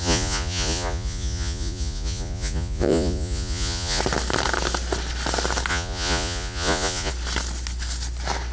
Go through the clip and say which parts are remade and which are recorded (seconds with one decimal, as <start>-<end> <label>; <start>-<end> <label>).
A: 0.0-4.0 remade; 4.0-5.7 recorded; 5.7-7.1 remade; 7.1-8.5 recorded